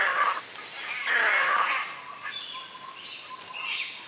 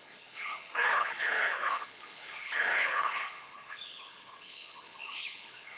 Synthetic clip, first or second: second